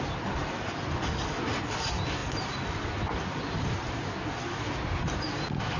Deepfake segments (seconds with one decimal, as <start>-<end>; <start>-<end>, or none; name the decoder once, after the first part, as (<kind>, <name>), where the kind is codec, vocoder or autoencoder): none